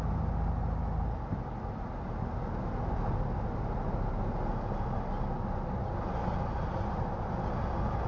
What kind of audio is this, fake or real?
real